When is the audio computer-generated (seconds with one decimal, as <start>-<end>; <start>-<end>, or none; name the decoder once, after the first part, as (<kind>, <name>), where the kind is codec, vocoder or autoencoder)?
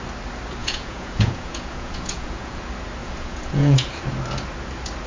0.6-2.6 (vocoder, Vocos); 3.0-4.0